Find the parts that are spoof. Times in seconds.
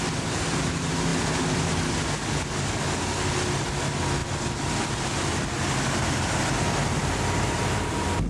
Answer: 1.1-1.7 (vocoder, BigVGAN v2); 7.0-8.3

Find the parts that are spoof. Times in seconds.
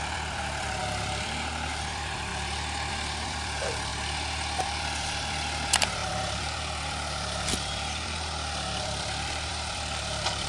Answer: 0.0-2.3 (vocoder, BigVGAN v2); 2.9-3.9; 4.6-10.5